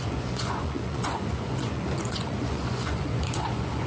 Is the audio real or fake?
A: fake